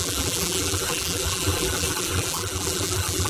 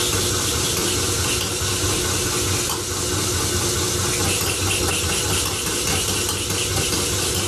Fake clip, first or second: first